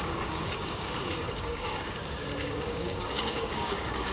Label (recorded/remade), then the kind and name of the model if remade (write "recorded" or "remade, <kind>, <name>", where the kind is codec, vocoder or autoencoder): remade, codec, DAC